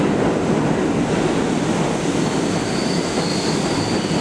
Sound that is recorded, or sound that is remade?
recorded